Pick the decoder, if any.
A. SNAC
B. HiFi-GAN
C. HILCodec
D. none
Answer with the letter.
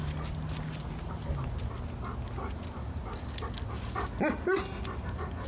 D